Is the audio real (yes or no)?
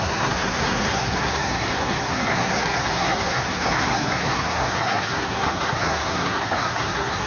no